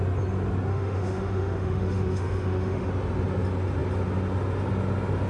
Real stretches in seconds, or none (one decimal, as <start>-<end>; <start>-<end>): 0.0-0.7; 2.9-5.3